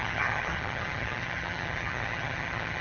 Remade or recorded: remade